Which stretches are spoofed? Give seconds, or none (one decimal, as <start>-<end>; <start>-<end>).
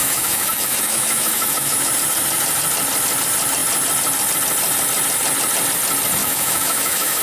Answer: 0.0-1.9; 6.2-7.2